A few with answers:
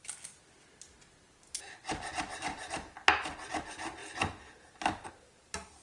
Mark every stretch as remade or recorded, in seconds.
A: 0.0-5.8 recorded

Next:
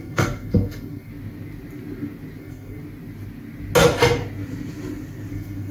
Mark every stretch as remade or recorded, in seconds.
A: 0.0-1.1 remade; 1.1-2.4 recorded; 2.4-2.8 remade; 2.8-5.3 recorded; 5.3-5.7 remade